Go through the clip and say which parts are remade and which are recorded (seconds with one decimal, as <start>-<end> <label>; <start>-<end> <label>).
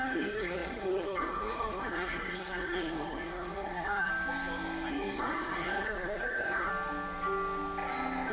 0.0-4.1 remade; 4.1-4.9 recorded; 4.9-6.7 remade; 6.7-8.3 recorded